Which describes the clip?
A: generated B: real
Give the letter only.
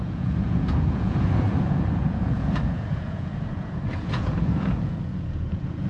A